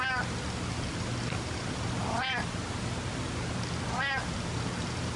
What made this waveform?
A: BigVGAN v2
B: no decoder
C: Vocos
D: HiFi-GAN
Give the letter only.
B